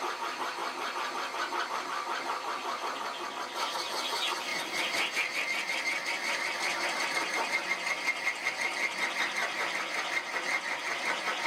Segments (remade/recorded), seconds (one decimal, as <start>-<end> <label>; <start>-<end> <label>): 0.0-0.6 recorded; 0.6-3.3 remade; 3.3-4.5 recorded; 4.5-7.7 remade; 7.7-9.4 recorded; 9.4-10.6 remade; 10.6-11.5 recorded